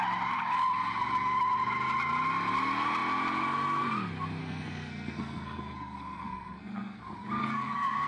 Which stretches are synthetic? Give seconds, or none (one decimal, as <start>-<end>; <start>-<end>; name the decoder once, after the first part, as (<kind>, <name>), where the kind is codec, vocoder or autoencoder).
4.4-7.0 (codec, SNAC); 7.4-8.1